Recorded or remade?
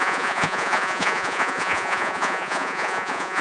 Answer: remade